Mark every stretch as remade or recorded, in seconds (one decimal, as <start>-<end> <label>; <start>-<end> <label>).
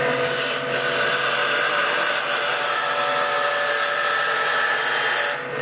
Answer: 0.0-5.6 recorded